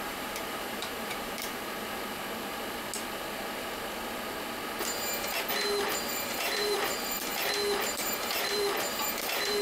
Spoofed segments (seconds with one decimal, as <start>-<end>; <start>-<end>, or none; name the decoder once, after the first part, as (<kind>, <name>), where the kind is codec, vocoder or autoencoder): 0.0-1.5 (vocoder, BigVGAN v2); 6.0-7.3; 7.8-9.6